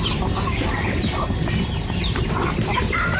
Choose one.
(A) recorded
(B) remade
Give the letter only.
A